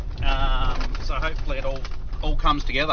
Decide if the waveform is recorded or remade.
recorded